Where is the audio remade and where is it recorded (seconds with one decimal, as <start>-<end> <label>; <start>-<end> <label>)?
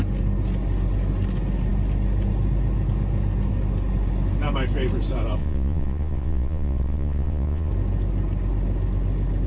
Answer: 0.0-5.4 recorded; 5.4-7.7 remade; 7.7-9.5 recorded